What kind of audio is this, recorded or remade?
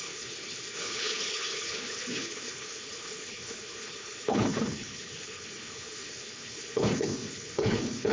remade